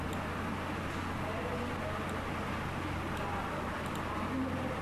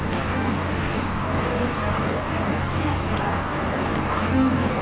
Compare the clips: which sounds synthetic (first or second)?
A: second